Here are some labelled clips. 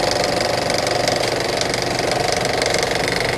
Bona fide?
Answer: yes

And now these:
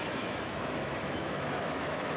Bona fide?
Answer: no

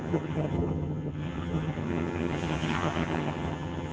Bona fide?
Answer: no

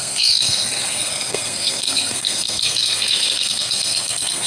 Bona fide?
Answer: no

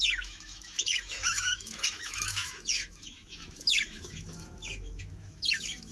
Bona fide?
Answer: no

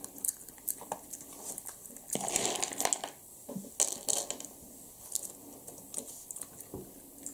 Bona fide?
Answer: yes